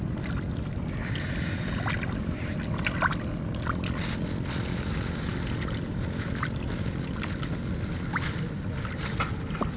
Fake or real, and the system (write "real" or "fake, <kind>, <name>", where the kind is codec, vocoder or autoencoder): real